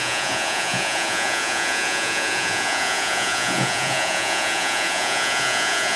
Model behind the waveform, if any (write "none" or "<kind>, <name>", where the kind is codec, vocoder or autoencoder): vocoder, Vocos